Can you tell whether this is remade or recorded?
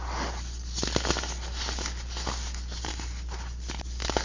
recorded